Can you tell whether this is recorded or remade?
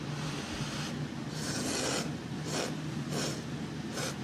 recorded